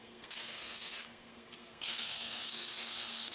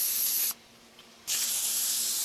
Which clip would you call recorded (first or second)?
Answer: second